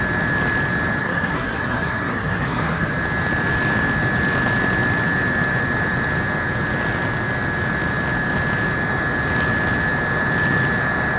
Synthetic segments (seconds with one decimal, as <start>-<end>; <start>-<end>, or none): 1.0-2.9

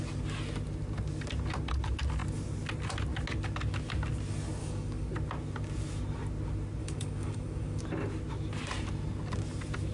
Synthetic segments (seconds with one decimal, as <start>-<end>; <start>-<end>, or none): 4.6-5.1; 6.8-7.8

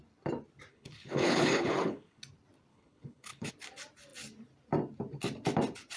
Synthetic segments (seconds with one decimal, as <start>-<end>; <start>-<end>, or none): 0.7-2.2; 2.7-3.5

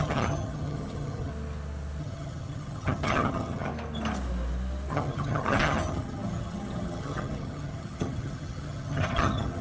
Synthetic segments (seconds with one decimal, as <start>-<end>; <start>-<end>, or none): 0.0-1.3; 2.0-3.7; 4.9-9.6